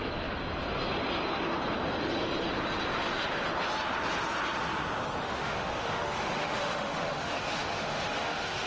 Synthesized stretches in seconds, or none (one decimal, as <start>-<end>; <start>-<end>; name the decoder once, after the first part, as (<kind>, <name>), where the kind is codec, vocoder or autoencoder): 5.2-8.7 (autoencoder, DAC-VAE)